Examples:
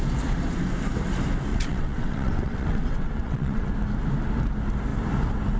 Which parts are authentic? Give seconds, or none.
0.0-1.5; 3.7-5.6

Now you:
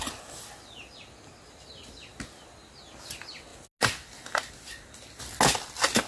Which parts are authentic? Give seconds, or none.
0.0-6.1

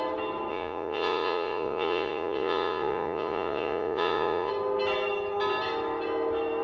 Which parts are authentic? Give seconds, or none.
0.0-0.5; 4.5-6.6

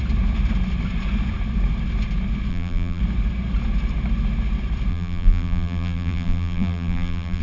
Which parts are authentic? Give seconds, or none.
0.0-2.5; 3.0-4.9

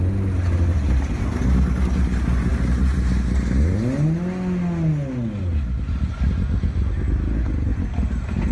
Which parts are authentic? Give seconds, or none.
0.0-8.5

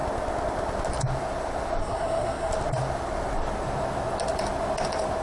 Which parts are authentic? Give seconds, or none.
0.0-1.8; 2.5-5.2

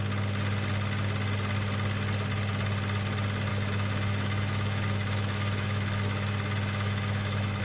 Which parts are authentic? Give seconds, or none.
0.0-3.5